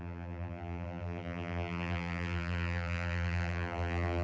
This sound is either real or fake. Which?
fake